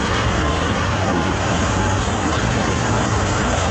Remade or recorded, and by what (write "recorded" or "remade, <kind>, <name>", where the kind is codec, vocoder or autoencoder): remade, codec, SNAC